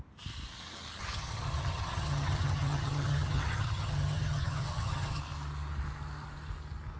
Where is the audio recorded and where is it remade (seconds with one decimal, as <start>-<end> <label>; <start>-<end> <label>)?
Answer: 0.0-1.0 recorded; 1.0-5.2 remade; 5.2-7.0 recorded